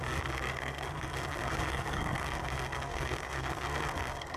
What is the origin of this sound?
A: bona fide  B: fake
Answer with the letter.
B